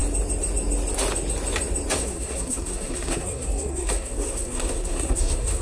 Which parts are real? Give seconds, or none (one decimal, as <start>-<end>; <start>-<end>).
0.0-2.0